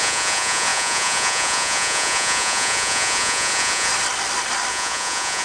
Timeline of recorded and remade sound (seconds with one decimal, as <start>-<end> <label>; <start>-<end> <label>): 0.0-3.9 remade; 3.9-4.7 recorded; 4.7-5.4 remade